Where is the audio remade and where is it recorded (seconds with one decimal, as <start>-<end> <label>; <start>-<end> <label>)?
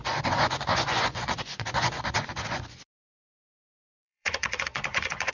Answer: 0.0-3.2 remade; 3.2-3.6 recorded; 3.6-5.3 remade